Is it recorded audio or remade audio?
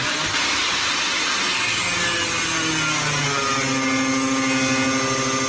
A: recorded